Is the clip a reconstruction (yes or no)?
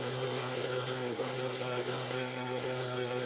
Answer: yes